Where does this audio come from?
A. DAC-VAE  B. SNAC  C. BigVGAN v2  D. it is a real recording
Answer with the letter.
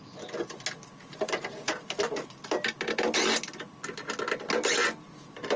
D